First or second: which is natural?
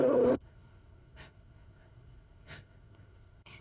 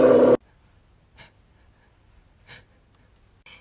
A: second